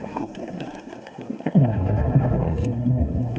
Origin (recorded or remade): remade